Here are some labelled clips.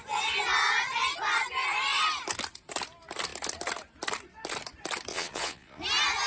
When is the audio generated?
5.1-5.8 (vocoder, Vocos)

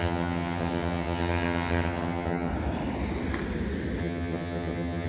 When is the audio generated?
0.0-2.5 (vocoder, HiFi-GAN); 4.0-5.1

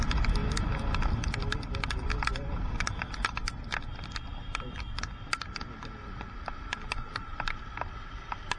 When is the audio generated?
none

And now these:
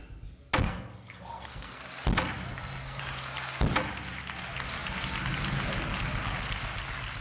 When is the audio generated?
0.6-1.8 (codec, SNAC); 2.5-3.0